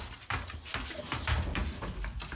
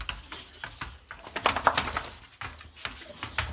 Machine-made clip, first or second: first